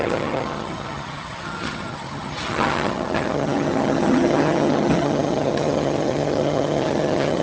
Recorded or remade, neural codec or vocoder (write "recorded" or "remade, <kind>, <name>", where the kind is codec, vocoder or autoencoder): remade, vocoder, HiFi-GAN